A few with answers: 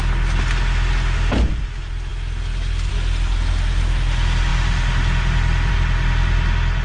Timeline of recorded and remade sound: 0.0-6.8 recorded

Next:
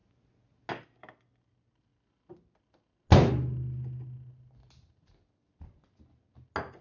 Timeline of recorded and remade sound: 0.0-6.8 recorded